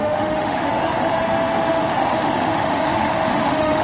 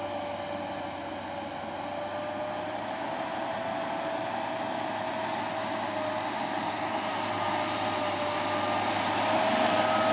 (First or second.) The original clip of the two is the second